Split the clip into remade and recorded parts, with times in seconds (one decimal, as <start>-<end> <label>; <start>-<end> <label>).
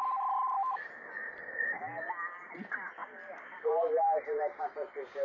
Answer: 0.0-3.0 recorded; 3.0-3.9 remade; 3.9-5.2 recorded